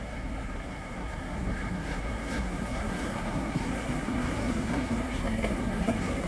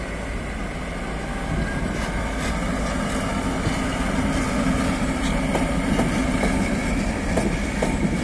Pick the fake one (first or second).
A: first